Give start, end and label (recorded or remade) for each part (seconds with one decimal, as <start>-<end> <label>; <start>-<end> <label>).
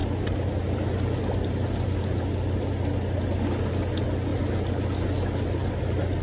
0.0-6.2 recorded